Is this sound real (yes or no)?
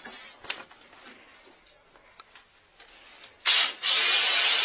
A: yes